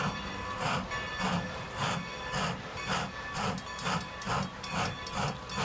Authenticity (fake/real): real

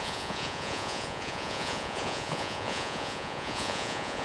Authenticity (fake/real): fake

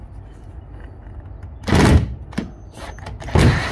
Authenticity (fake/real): real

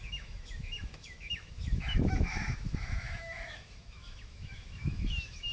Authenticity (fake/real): fake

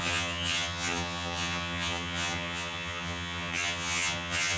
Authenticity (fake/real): fake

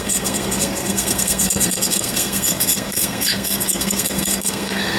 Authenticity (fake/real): fake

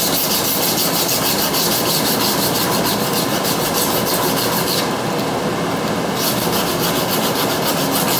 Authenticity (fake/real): real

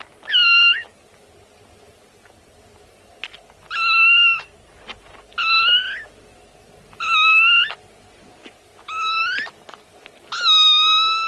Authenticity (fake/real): real